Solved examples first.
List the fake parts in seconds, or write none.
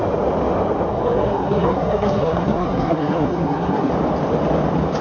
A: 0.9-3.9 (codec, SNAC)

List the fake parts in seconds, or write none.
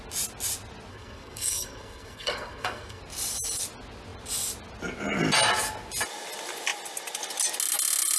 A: 0.9-3.0 (codec, SNAC)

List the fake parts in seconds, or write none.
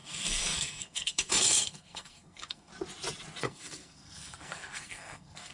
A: 0.0-2.7 (codec, SNAC); 3.4-5.5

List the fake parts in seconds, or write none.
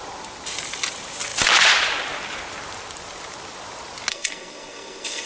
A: 4.1-5.3 (codec, SNAC)